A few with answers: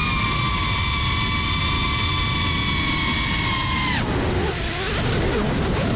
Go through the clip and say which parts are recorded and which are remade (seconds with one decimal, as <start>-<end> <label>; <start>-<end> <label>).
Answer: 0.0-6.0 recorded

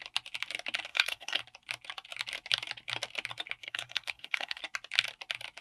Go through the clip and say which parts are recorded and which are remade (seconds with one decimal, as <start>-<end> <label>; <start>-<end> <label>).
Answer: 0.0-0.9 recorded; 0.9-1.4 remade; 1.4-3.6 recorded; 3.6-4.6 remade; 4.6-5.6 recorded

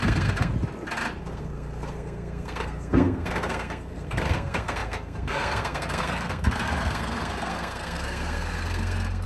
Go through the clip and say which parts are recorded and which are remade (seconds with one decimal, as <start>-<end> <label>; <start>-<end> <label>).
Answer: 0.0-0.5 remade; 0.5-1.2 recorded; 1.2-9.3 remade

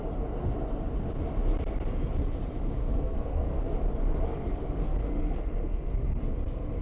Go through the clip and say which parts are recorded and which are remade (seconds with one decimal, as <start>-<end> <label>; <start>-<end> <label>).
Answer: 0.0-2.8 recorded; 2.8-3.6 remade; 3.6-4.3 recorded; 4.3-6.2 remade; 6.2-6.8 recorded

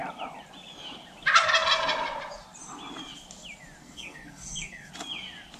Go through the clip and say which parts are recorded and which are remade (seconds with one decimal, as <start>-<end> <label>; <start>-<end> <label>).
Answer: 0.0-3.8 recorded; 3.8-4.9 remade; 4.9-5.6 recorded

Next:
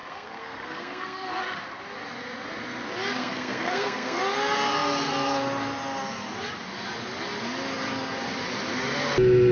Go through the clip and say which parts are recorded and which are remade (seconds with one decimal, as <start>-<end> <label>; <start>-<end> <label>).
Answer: 0.0-1.3 remade; 1.3-3.2 recorded; 3.2-4.2 remade; 4.2-9.5 recorded

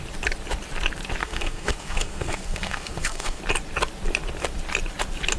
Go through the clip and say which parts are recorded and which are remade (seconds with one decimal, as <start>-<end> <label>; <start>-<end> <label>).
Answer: 0.0-1.2 recorded; 1.2-3.4 remade; 3.4-5.4 recorded